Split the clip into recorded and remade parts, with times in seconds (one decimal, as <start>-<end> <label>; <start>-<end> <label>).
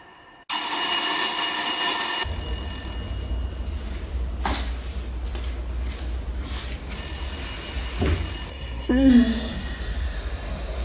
0.0-8.5 recorded; 8.5-9.1 remade; 9.1-10.8 recorded